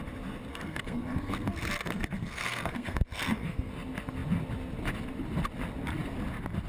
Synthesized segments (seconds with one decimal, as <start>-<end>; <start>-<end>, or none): 0.5-3.7